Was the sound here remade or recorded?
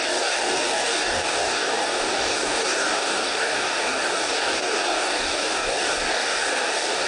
remade